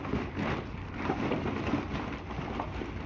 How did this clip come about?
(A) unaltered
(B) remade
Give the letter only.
A